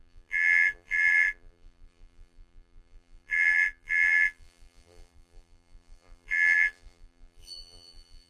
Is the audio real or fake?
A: fake